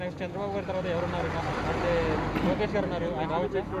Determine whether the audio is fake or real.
real